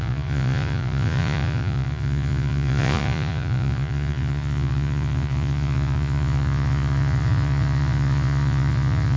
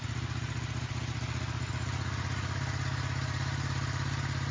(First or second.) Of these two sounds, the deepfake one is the first